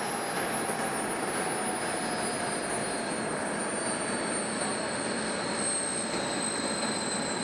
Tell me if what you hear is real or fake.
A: real